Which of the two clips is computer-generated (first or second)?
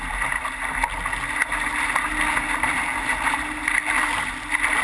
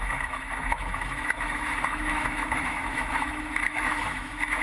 second